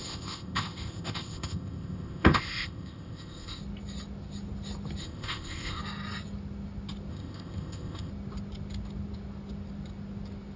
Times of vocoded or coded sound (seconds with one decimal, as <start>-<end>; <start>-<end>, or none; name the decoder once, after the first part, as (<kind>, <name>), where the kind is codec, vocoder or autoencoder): 0.0-3.6 (codec, ZipCodec); 5.0-5.8; 7.1-8.1